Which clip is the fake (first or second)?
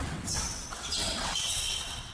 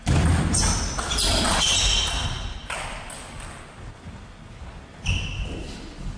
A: first